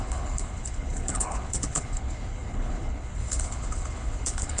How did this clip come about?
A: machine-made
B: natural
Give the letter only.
A